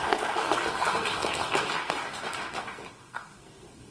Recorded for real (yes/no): no